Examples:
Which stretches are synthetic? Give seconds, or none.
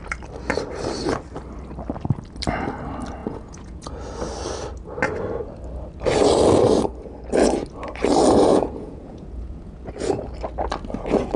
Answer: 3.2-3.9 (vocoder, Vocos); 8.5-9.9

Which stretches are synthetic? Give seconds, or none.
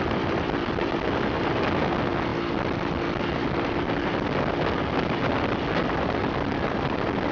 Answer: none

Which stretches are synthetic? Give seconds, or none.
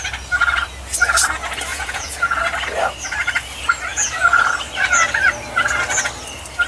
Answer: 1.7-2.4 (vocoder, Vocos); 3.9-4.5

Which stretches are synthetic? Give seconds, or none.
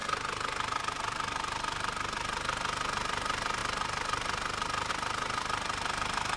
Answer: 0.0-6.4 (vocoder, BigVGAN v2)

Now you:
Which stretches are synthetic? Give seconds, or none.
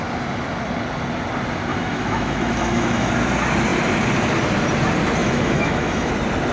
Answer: 1.7-3.1 (autoencoder, DAC-VAE); 5.2-6.1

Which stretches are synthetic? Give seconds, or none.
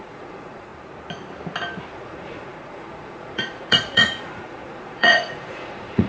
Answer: 0.0-0.7 (vocoder, Vocos); 1.9-6.1